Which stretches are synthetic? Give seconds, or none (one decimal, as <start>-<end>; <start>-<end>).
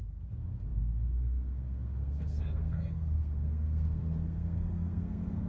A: 0.0-5.5